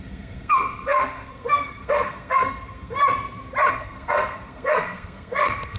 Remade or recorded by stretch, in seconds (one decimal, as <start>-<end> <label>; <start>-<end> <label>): 0.0-3.0 remade; 3.0-3.7 recorded; 3.7-5.8 remade

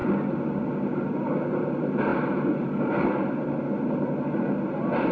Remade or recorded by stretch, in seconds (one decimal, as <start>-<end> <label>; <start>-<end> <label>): 0.0-5.1 recorded

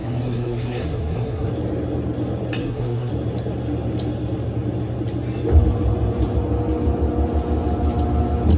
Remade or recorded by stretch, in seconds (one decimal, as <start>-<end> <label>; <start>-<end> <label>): 0.0-1.5 remade; 1.5-2.6 recorded; 2.6-3.1 remade; 3.1-8.6 recorded

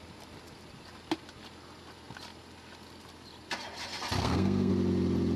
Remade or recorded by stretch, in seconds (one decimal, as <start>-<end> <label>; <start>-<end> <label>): 0.0-4.2 recorded; 4.2-4.7 remade; 4.7-5.4 recorded

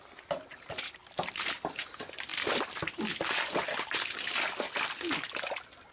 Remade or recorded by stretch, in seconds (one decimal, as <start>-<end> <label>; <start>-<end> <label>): 0.0-1.0 recorded; 1.0-1.8 remade; 1.8-5.9 recorded

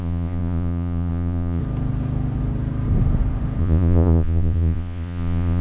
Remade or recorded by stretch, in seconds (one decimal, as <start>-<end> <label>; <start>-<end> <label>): 0.0-1.6 remade; 1.6-3.6 recorded; 3.6-5.6 remade

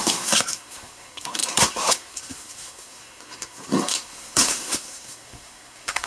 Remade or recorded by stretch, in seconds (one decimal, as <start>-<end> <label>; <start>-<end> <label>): 0.0-6.1 remade